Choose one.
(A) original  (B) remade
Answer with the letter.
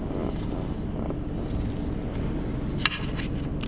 A